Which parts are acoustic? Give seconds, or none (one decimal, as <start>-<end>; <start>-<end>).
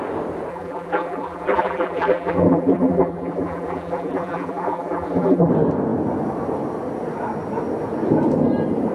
0.0-0.5; 5.5-8.9